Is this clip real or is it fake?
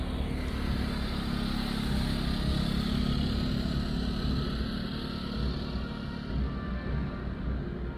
real